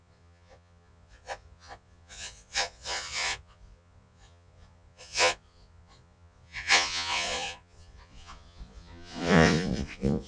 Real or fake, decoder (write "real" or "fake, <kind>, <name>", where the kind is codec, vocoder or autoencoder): fake, vocoder, Vocos